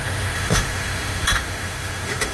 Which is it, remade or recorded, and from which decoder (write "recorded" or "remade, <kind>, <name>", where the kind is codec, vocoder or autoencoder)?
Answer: remade, autoencoder, DAC-VAE